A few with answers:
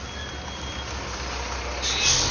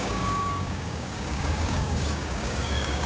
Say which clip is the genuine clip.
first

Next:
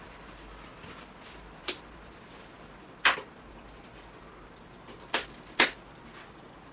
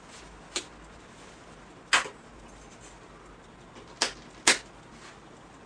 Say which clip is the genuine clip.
second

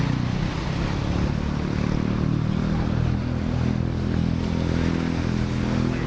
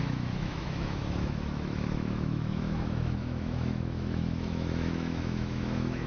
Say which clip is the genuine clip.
first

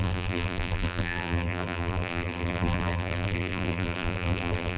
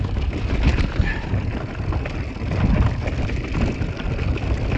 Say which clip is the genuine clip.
second